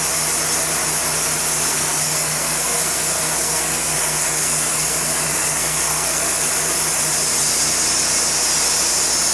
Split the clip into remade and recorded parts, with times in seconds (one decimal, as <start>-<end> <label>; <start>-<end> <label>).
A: 0.0-1.7 recorded; 1.7-6.5 remade; 6.5-9.3 recorded